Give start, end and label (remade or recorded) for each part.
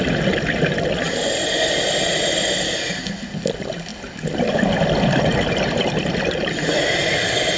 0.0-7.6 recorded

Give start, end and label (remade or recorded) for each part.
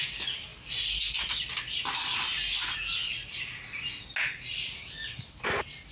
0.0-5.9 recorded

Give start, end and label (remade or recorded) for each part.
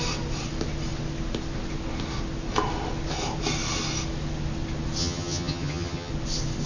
0.0-5.0 recorded; 5.0-6.1 remade; 6.1-6.7 recorded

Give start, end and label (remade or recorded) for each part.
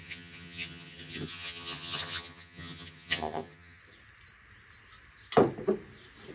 0.0-3.8 remade; 3.8-6.3 recorded